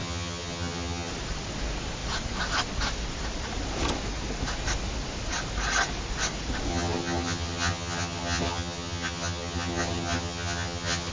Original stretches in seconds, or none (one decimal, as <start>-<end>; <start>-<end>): 1.1-6.7

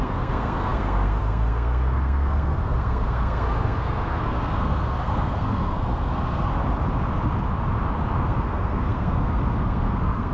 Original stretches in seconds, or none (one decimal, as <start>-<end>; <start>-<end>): 6.5-8.2

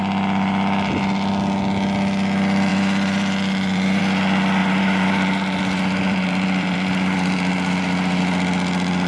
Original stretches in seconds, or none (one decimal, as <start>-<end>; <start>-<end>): 0.0-2.7; 4.0-4.6; 8.2-9.1

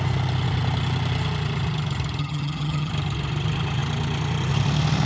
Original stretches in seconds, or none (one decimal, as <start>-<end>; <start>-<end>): 0.0-2.2; 2.9-5.1

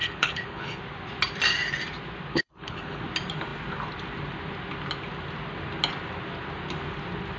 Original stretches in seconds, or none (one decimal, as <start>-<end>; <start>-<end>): 0.8-2.3; 3.0-7.4

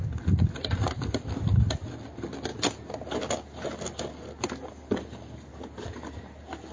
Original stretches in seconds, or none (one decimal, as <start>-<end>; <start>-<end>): 0.0-6.7

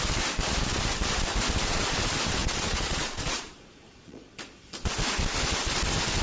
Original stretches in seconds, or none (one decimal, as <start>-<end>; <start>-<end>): 0.0-2.4; 4.3-6.2

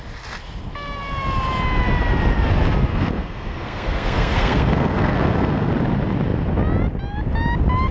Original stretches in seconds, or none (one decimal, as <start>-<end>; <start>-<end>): 0.0-2.9; 5.7-7.9